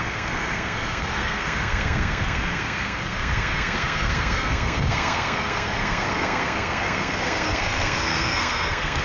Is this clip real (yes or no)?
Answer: no